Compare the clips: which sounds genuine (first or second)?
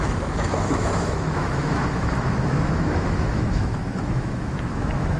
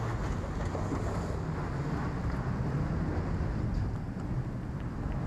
second